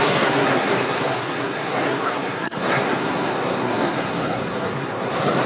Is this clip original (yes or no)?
no